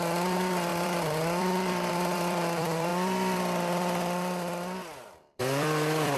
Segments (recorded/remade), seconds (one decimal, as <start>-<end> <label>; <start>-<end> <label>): 0.0-6.2 remade